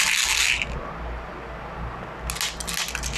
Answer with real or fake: real